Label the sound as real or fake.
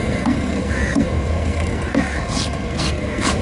fake